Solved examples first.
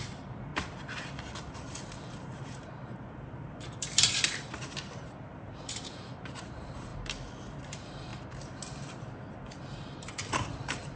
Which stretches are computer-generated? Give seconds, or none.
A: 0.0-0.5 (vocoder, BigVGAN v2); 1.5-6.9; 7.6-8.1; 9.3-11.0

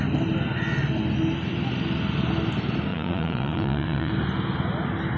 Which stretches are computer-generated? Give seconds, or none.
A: 2.9-4.1 (vocoder, Vocos)

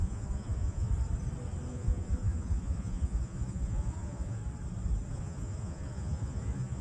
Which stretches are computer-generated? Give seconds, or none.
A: 0.0-0.9 (vocoder, Vocos); 1.7-4.4; 5.1-6.8

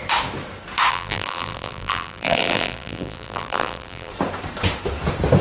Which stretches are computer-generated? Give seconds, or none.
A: 0.9-4.1 (vocoder, BigVGAN v2)